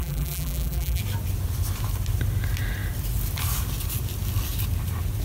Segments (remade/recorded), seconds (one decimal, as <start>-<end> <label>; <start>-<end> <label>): 0.0-1.0 remade; 1.0-5.2 recorded